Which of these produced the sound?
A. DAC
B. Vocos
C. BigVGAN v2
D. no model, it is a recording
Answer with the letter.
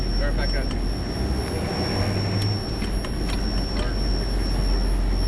D